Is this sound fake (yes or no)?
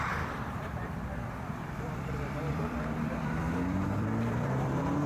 yes